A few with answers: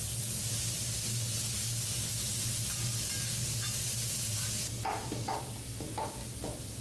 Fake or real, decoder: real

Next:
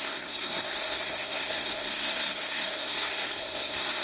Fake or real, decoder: fake, codec, SNAC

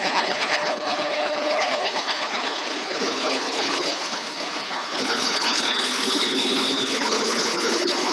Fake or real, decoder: fake, codec, HILCodec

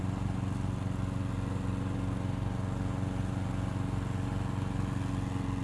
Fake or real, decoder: real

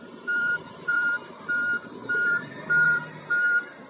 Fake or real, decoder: fake, vocoder, BigVGAN v2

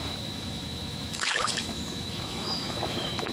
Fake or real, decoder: fake, autoencoder, DAC-VAE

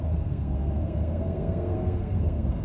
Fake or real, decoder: fake, codec, SNAC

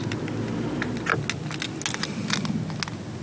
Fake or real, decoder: real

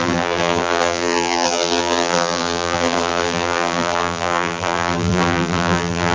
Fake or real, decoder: fake, vocoder, BigVGAN v2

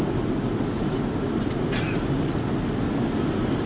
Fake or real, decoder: real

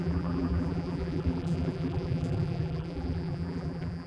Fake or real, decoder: fake, vocoder, BigVGAN v2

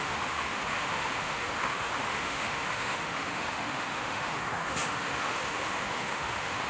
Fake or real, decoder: fake, autoencoder, DAC-VAE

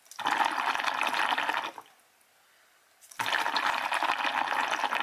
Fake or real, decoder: real